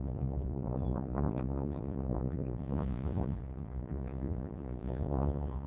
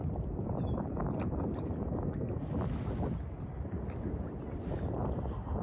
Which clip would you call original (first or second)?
second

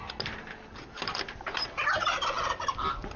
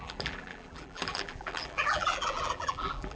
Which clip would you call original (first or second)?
first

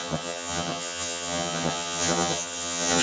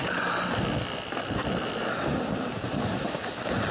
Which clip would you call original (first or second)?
second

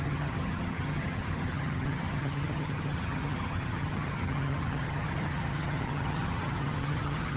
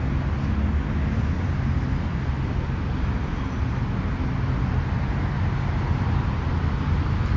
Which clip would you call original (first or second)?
second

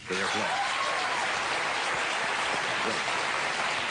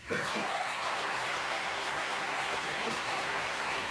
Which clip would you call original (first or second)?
first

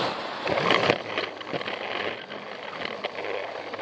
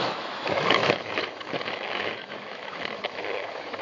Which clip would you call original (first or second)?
first